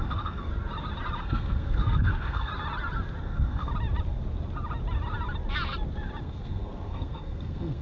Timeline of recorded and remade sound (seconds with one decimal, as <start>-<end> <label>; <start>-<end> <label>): 0.0-0.5 remade; 0.5-1.2 recorded; 1.2-2.5 remade; 2.5-3.2 recorded; 3.2-3.7 remade; 3.7-6.2 recorded; 6.2-7.8 remade